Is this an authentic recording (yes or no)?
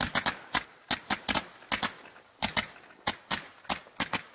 yes